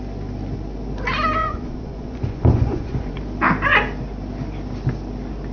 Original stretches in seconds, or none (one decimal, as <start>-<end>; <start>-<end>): 0.0-1.4; 3.2-5.5